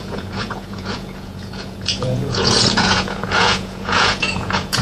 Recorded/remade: remade